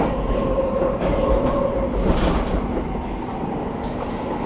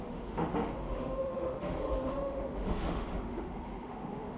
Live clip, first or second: first